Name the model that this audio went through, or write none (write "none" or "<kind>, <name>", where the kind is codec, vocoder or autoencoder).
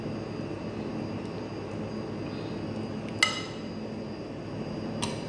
none